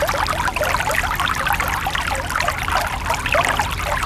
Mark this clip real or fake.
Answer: real